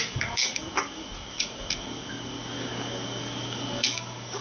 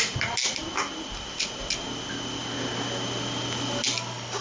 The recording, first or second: second